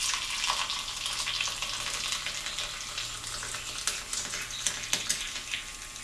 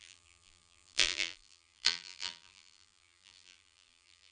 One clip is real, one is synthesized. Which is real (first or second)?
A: first